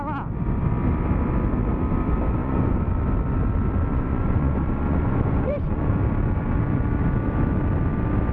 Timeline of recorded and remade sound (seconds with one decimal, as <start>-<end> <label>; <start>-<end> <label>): 0.0-2.4 recorded; 2.4-2.9 remade; 2.9-3.9 recorded; 3.9-5.9 remade; 5.9-8.3 recorded